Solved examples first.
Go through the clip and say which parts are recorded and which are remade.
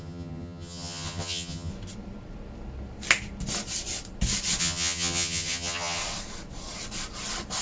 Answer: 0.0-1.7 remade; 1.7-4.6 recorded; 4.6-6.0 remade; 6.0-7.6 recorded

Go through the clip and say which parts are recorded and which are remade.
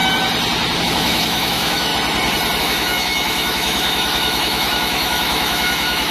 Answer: 0.0-0.8 recorded; 0.8-1.9 remade; 1.9-2.6 recorded; 2.6-6.1 remade